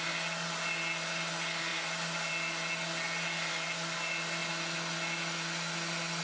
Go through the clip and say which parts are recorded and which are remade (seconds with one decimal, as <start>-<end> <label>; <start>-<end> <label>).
0.0-6.2 recorded